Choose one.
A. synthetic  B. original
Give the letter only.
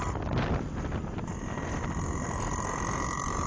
B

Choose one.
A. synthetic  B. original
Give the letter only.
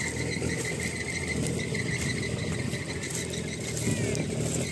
B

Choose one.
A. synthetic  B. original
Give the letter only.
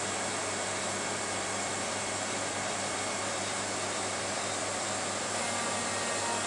B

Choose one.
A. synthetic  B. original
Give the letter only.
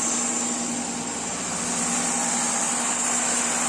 B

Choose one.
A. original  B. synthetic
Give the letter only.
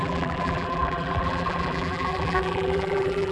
B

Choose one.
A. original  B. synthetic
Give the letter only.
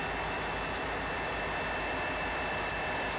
A